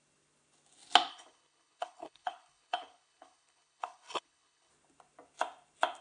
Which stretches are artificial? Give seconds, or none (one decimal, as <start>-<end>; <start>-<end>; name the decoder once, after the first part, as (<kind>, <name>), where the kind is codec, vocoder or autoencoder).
1.1-4.7 (codec, HILCodec)

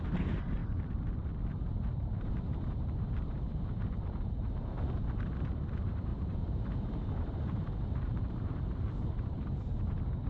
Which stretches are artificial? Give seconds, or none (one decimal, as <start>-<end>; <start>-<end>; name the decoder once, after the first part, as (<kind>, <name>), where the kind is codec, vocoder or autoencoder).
0.0-0.6 (vocoder, BigVGAN v2); 1.5-10.3

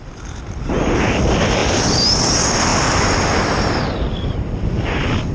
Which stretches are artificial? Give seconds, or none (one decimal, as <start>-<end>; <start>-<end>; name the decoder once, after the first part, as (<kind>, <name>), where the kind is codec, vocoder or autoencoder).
none

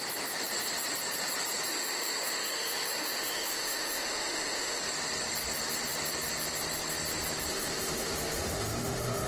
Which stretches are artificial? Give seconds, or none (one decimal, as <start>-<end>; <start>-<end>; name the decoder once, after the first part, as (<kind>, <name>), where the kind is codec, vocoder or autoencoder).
1.7-4.8 (autoencoder, DAC-VAE); 7.5-9.3

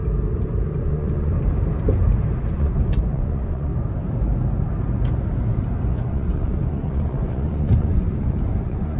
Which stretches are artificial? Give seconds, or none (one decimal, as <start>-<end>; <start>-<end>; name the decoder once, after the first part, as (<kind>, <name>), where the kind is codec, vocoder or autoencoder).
0.8-1.3 (vocoder, Vocos); 2.5-3.7; 6.1-9.0

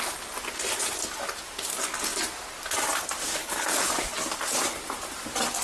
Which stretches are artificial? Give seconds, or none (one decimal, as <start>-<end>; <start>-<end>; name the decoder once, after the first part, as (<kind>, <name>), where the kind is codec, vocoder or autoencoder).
3.4-3.9 (codec, HILCodec)

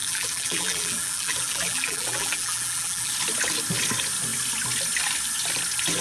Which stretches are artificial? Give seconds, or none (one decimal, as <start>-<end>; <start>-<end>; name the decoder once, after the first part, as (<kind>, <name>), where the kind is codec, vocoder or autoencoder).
0.0-3.1 (vocoder, BigVGAN v2)

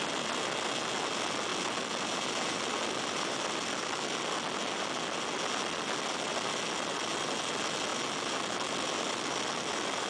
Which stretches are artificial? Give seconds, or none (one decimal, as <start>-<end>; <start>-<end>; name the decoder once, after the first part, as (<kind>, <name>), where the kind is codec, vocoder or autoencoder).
none